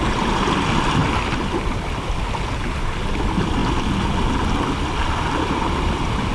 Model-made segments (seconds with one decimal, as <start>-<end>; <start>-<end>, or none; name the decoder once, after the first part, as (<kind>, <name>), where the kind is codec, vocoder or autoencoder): none